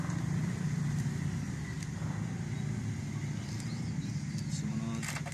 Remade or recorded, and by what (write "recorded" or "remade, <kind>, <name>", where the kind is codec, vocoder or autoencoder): recorded